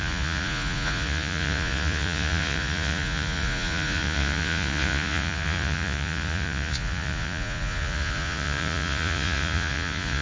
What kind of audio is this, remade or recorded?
remade